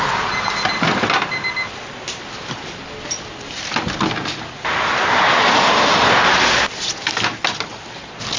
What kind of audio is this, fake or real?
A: real